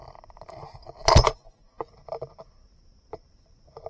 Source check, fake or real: real